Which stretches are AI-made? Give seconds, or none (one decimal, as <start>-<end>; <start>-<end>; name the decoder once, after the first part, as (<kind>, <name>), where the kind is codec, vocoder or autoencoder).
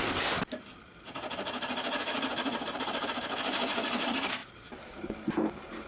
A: 2.5-3.6 (vocoder, BigVGAN v2); 4.4-5.9